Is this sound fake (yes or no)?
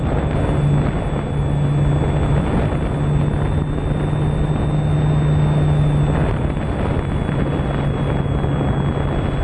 no